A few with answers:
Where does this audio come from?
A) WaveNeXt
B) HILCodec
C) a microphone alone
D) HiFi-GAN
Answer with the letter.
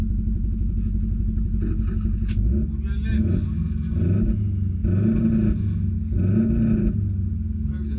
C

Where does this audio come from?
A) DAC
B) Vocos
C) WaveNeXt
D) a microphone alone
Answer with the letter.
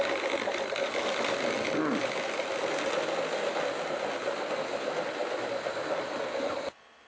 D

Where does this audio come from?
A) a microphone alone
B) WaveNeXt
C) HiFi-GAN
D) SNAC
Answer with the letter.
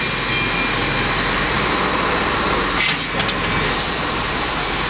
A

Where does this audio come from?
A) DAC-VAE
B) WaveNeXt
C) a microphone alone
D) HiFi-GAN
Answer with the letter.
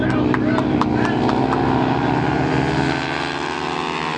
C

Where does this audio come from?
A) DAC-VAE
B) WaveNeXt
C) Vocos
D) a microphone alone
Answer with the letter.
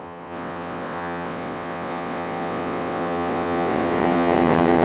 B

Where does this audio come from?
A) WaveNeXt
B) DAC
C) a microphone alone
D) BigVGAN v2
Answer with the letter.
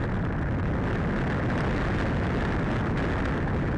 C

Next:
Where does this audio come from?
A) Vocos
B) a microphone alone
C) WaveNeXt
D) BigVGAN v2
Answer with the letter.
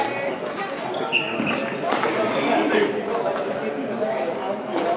B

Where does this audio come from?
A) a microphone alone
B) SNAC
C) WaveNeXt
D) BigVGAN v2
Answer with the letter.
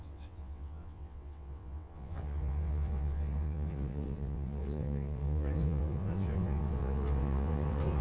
C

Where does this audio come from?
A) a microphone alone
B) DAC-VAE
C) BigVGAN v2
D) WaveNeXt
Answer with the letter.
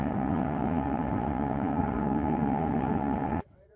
D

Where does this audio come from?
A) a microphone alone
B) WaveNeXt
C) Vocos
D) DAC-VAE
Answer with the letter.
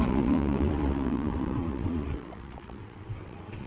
B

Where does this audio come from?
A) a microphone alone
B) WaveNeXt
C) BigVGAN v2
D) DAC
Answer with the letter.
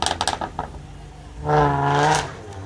A